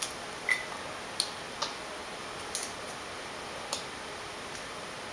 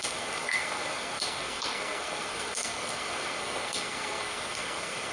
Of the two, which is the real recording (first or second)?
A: first